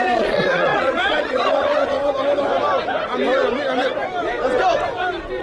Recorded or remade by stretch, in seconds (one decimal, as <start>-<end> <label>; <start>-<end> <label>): 0.0-2.0 remade; 2.0-5.4 recorded